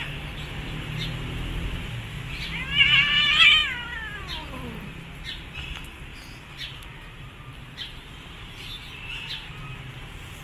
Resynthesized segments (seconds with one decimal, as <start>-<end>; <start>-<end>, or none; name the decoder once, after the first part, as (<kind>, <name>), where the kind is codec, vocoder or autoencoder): 6.1-9.6 (vocoder, BigVGAN v2)

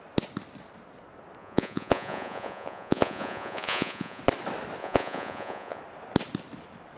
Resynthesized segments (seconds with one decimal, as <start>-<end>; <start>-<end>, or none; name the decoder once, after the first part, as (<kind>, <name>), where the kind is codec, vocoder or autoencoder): 1.4-4.2 (vocoder, Vocos); 4.8-5.8

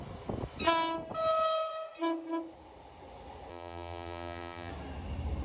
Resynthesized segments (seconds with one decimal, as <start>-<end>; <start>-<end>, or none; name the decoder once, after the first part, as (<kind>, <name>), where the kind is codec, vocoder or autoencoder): 3.5-4.7 (vocoder, BigVGAN v2)

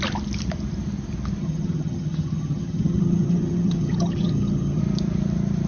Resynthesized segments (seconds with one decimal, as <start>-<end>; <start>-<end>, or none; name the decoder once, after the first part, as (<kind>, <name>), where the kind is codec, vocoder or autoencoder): 1.4-4.8 (vocoder, HiFi-GAN)